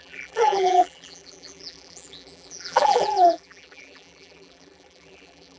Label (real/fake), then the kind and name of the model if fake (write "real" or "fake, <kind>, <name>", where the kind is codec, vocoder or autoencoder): fake, vocoder, BigVGAN v2